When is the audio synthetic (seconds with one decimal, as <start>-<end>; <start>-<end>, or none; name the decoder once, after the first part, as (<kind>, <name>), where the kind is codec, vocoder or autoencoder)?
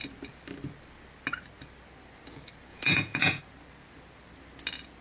2.7-3.4 (vocoder, Vocos)